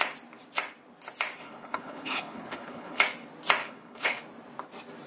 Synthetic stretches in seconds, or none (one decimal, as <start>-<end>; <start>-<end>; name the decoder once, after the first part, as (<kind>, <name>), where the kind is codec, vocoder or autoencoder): 1.4-3.0 (codec, HILCodec); 3.6-4.2